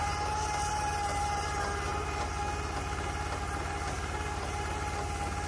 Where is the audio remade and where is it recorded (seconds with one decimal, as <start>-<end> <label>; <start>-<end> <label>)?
0.0-5.5 recorded